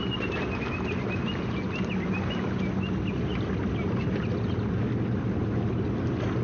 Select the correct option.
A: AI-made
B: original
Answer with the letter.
B